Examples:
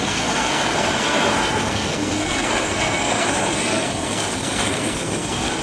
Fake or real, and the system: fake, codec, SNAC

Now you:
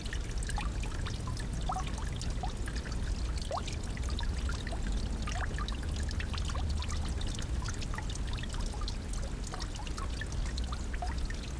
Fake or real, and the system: real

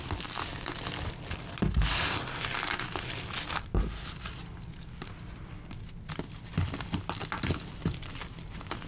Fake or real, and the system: real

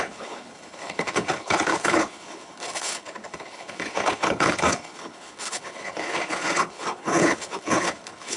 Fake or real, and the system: fake, codec, HILCodec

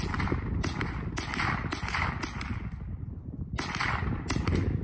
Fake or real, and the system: real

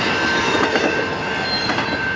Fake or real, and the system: real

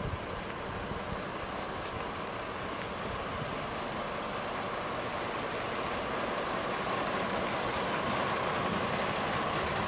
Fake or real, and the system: real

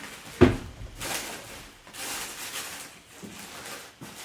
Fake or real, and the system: real